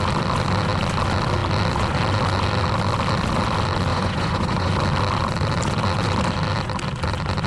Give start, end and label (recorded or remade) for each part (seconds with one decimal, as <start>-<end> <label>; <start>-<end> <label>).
0.0-3.9 recorded; 3.9-4.7 remade; 4.7-7.5 recorded